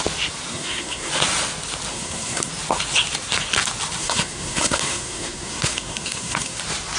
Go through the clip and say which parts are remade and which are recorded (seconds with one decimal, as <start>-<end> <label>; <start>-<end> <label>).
0.0-0.5 recorded; 0.5-1.1 remade; 1.1-1.9 recorded; 1.9-2.5 remade; 2.5-4.0 recorded; 4.0-6.6 remade; 6.6-7.0 recorded